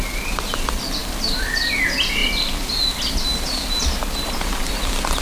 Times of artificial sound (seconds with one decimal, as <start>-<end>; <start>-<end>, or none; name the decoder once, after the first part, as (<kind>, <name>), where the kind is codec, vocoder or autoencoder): none

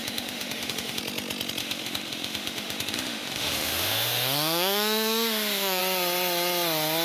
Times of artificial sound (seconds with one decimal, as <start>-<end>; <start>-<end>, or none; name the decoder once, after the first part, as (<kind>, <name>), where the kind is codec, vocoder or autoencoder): 0.0-1.0 (autoencoder, DAC-VAE); 1.6-5.8

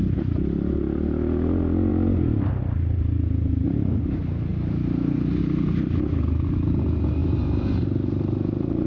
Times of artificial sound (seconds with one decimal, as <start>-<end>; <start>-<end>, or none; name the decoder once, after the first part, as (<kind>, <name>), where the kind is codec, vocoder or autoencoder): 4.5-5.4 (vocoder, BigVGAN v2); 7.2-8.9